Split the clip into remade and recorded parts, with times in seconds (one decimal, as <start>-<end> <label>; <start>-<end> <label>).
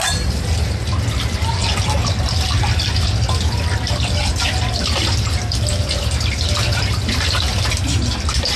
0.0-8.6 recorded